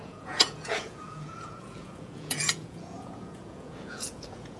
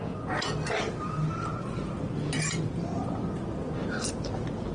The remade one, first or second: first